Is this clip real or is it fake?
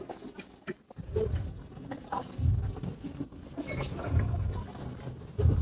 real